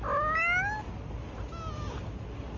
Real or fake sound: real